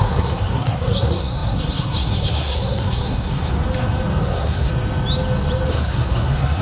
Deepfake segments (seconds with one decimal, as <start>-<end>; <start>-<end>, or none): 0.0-3.5; 4.2-4.7; 5.7-6.6